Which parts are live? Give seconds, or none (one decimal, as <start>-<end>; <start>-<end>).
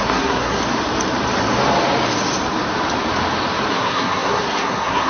0.6-3.7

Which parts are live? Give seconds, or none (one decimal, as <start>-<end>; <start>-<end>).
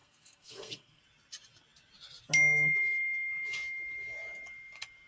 1.0-5.1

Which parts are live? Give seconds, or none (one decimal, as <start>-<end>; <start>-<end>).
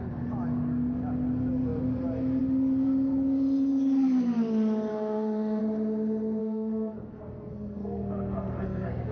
0.0-4.9; 5.6-6.4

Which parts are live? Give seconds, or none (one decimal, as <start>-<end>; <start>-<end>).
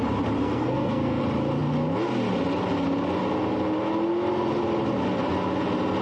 0.0-0.4; 1.2-6.0